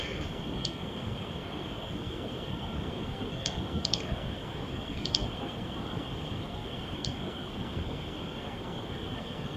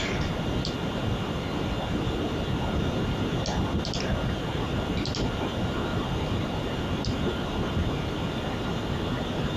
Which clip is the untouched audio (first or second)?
second